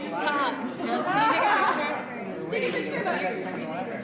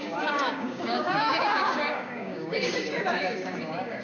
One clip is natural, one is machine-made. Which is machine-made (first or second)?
second